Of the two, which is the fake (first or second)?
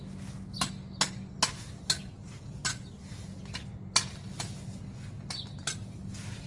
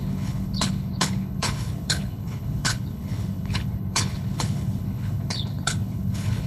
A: second